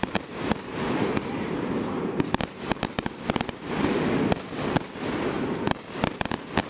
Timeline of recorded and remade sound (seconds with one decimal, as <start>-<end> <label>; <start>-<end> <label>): 0.0-4.0 remade; 4.0-6.7 recorded